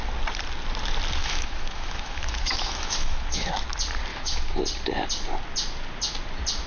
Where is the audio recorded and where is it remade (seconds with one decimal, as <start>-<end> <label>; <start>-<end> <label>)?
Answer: 0.0-1.2 recorded; 1.2-3.5 remade; 3.5-4.1 recorded; 4.1-4.6 remade; 4.6-6.7 recorded